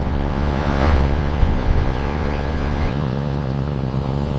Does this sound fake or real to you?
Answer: fake